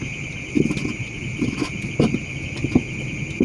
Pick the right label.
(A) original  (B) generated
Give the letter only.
A